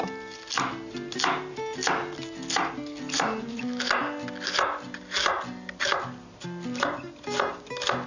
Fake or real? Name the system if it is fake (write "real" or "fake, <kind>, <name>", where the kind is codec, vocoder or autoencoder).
real